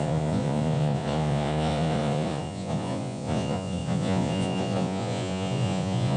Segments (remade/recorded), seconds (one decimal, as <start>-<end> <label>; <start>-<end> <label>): 0.0-6.2 remade

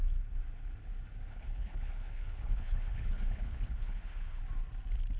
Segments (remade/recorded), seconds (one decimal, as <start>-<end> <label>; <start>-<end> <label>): 0.0-1.3 recorded; 1.3-4.4 remade; 4.4-5.2 recorded

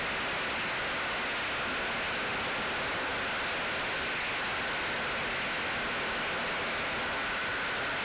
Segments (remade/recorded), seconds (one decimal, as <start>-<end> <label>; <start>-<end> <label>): 0.0-8.0 recorded

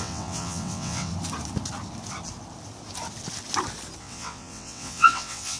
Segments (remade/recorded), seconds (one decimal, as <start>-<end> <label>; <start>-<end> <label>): 0.0-1.1 remade; 1.1-4.0 recorded; 4.0-5.6 remade

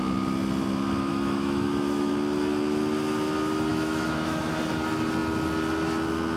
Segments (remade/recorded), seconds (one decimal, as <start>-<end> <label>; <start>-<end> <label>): 0.0-1.1 recorded; 1.1-2.1 remade; 2.1-3.7 recorded; 3.7-4.5 remade; 4.5-6.4 recorded

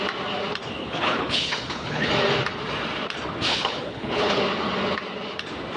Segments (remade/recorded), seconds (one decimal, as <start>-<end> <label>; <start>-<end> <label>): 0.0-0.8 recorded; 0.8-2.1 remade; 2.1-3.5 recorded; 3.5-4.4 remade; 4.4-5.8 recorded

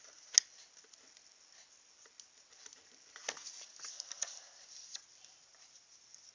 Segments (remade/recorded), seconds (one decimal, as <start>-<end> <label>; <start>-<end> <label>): 0.0-5.5 recorded; 5.5-6.3 remade

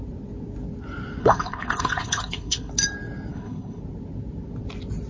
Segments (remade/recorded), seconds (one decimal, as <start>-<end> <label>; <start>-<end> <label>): 0.0-1.2 recorded; 1.2-2.7 remade; 2.7-3.3 recorded; 3.3-3.8 remade; 3.8-5.1 recorded